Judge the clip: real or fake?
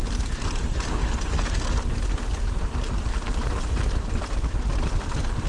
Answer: real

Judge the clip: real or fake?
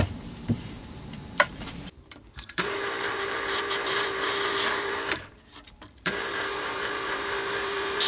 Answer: fake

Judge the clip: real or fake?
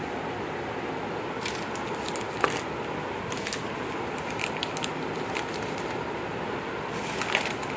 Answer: real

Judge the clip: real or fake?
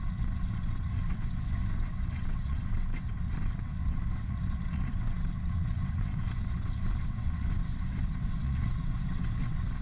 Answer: fake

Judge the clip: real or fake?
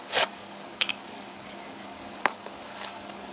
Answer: fake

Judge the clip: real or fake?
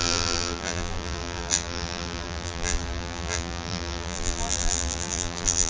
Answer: fake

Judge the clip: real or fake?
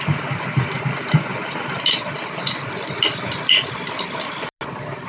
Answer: real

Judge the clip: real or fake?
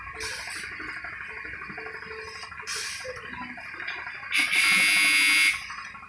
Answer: real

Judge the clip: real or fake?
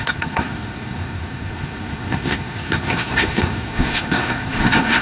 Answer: fake